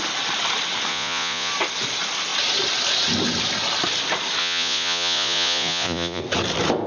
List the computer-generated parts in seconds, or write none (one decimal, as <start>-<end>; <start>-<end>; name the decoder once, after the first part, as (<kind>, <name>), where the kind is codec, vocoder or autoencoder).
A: 0.9-1.5 (vocoder, Vocos); 4.4-6.2